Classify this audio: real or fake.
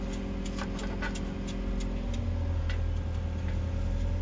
real